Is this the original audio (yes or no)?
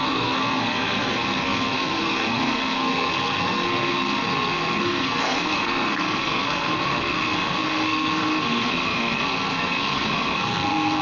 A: no